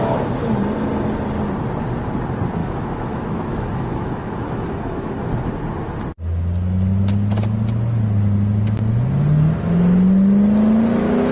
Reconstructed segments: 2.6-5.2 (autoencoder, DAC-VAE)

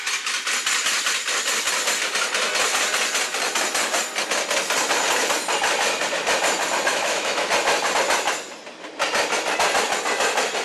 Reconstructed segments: 6.9-7.5 (autoencoder, DAC-VAE)